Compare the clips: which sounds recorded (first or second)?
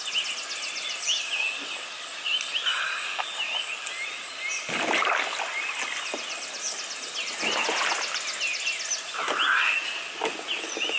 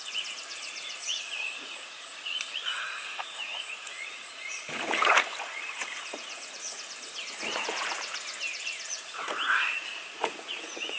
first